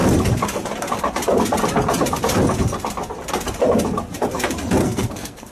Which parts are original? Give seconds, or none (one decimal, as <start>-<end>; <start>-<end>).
0.0-4.8

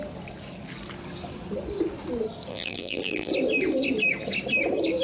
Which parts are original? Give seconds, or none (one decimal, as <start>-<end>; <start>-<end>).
0.0-2.5; 3.3-5.0

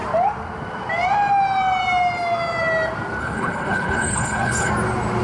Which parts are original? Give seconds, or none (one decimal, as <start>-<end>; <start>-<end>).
0.0-3.2; 4.7-5.2

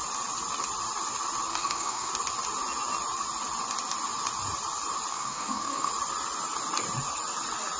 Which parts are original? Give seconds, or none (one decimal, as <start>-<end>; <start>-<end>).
0.0-1.5; 2.1-5.1; 5.9-7.8

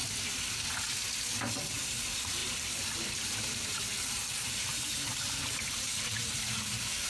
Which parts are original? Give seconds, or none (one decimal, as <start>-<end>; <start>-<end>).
0.0-1.9

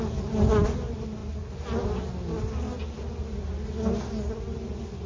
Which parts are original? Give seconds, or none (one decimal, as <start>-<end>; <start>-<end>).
0.0-5.1